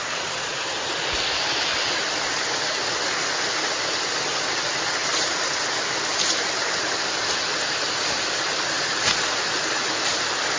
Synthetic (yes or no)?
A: no